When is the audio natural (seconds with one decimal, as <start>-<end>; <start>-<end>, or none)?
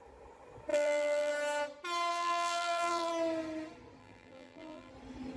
0.0-0.7; 1.3-2.1; 3.1-4.0; 4.9-5.4